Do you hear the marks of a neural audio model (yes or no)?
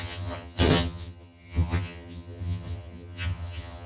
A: yes